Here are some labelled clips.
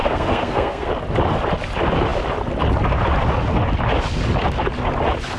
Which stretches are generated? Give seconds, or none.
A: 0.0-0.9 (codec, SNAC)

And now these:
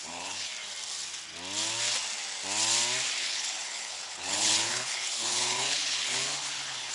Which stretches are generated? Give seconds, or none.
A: 0.0-0.5 (codec, HILCodec); 3.1-6.9

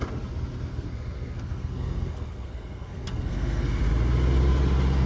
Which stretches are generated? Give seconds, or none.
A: 0.7-3.8 (codec, SNAC)

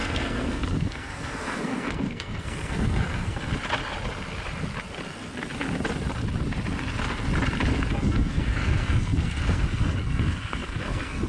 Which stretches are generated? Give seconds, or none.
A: 0.0-3.5 (codec, SNAC); 7.9-11.3

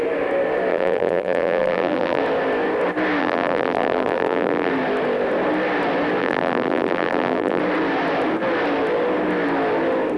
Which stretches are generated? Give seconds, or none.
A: 0.7-2.2 (vocoder, BigVGAN v2); 3.2-4.7; 6.2-7.6

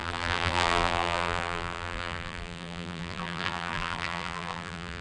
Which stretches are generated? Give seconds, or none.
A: 0.0-5.0 (vocoder, BigVGAN v2)

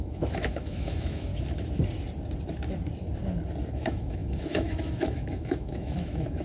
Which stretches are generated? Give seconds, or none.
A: 0.0-1.3 (autoencoder, DAC-VAE); 3.7-6.4